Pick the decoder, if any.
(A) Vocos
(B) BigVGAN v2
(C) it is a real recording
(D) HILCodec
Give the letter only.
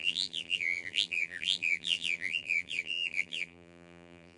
B